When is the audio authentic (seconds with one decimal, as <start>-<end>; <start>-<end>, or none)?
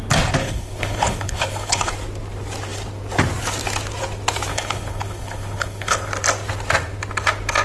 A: 0.0-0.4; 1.9-4.5; 6.1-7.6